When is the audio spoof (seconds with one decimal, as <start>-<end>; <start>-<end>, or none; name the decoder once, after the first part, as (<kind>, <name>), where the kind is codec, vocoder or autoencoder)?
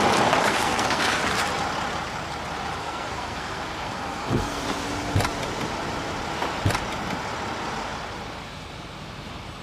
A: 0.4-1.2 (codec, SNAC); 2.8-4.6